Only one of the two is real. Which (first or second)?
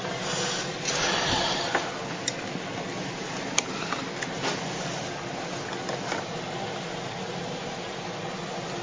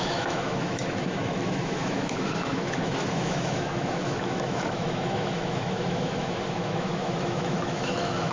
first